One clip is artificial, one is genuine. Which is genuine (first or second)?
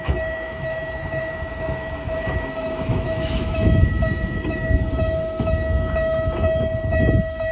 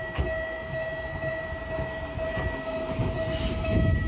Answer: second